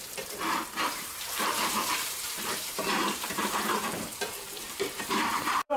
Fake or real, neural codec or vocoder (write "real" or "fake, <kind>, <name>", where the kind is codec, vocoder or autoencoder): fake, vocoder, BigVGAN v2